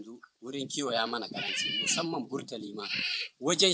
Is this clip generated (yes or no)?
yes